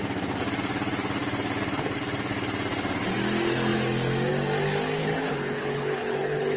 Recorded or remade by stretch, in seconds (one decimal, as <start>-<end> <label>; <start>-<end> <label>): 0.0-5.0 recorded; 5.0-6.6 remade